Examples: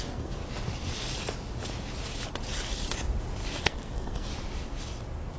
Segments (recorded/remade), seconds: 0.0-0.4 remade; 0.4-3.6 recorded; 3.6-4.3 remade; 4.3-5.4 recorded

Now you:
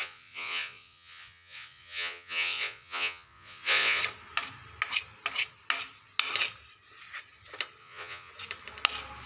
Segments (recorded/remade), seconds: 0.0-4.0 remade; 4.0-7.8 recorded; 7.8-8.3 remade; 8.3-9.3 recorded

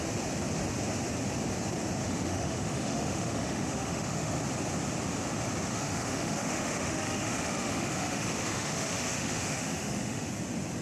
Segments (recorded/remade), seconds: 0.0-2.0 recorded; 2.0-4.3 remade; 4.3-5.7 recorded; 5.7-10.3 remade; 10.3-10.8 recorded

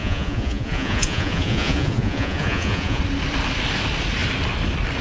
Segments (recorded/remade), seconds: 0.0-3.0 remade; 3.0-5.0 recorded

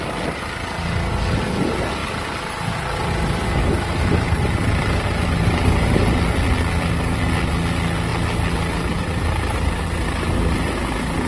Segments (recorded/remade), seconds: 0.0-3.6 recorded; 3.6-6.0 remade; 6.0-11.3 recorded

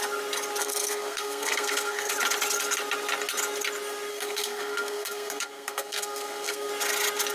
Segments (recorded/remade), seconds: 0.0-0.6 recorded; 0.6-2.1 remade; 2.1-4.1 recorded; 4.1-6.7 remade; 6.7-7.3 recorded